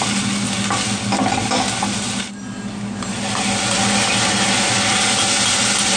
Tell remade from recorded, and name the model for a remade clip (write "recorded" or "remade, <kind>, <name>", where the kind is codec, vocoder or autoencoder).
recorded